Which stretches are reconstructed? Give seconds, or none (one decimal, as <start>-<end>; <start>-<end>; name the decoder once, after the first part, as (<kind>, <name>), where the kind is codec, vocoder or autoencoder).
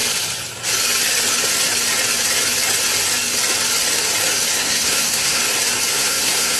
4.5-5.4 (codec, SNAC); 5.9-6.6